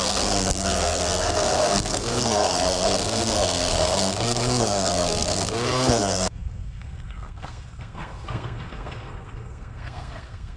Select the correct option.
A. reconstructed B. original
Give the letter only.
A